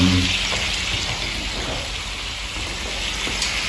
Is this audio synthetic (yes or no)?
no